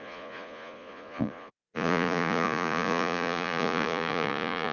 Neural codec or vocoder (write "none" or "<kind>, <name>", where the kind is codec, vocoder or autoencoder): vocoder, Vocos